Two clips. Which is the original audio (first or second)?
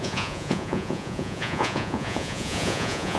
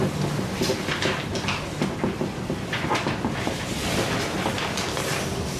second